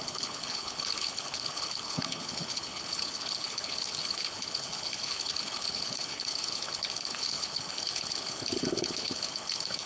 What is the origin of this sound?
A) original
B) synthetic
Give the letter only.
B